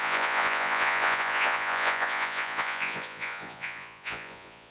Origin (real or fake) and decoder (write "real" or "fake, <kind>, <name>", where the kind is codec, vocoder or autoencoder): fake, vocoder, Vocos